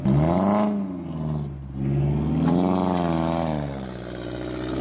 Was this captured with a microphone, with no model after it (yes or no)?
yes